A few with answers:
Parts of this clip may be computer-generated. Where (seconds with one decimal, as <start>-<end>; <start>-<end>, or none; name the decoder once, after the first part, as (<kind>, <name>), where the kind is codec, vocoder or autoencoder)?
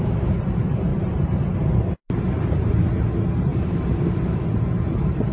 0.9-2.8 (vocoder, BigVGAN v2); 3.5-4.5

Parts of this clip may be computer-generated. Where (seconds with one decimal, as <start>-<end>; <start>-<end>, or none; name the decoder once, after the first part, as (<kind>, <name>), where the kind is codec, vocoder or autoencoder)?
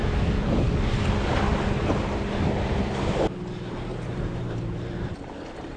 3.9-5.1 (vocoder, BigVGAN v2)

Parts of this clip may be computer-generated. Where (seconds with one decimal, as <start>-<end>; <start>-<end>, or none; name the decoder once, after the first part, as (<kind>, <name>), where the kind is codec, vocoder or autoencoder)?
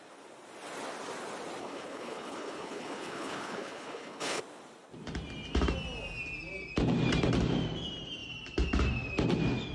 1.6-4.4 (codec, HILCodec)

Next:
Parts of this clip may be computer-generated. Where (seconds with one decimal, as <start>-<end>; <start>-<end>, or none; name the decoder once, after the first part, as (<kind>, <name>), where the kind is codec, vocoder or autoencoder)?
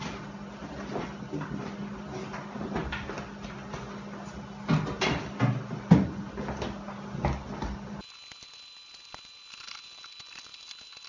none